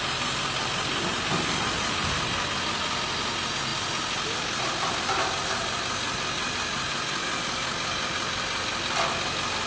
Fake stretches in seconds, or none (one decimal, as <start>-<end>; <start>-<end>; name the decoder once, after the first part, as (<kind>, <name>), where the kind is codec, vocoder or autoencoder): none